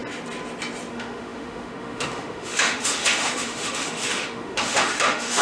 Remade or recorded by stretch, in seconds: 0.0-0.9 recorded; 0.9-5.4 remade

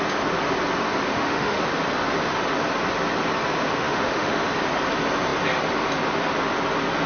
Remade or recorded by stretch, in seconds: 0.0-1.1 recorded; 1.1-1.6 remade; 1.6-3.7 recorded; 3.7-4.4 remade; 4.4-7.1 recorded

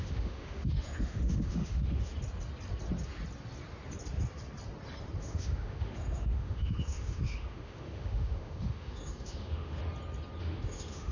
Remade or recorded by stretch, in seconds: 0.0-2.1 remade; 2.1-5.2 recorded; 5.2-9.8 remade; 9.8-10.4 recorded; 10.4-11.1 remade

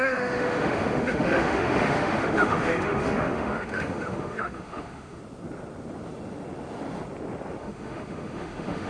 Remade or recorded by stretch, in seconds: 0.0-5.2 remade; 5.2-7.6 recorded; 7.6-8.9 remade

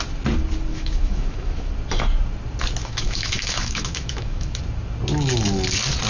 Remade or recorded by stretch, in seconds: 0.0-0.7 recorded; 0.7-1.7 remade; 1.7-2.8 recorded; 2.8-4.6 remade; 4.6-6.1 recorded